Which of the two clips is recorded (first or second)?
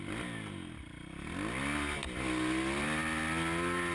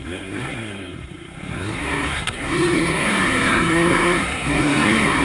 first